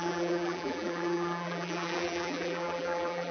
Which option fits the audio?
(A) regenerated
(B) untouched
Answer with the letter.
A